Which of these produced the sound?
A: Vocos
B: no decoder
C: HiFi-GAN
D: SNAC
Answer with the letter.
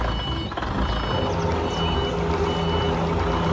B